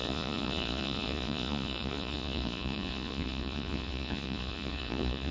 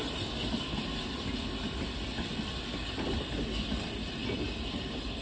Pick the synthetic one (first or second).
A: first